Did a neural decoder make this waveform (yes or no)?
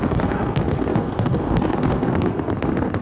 yes